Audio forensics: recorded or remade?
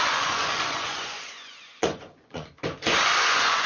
remade